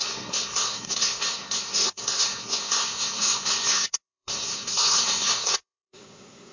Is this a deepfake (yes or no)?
yes